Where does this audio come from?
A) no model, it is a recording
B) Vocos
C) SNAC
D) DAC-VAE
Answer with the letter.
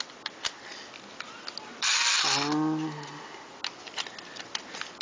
A